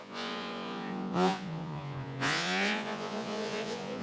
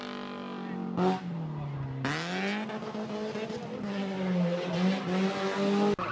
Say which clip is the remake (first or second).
first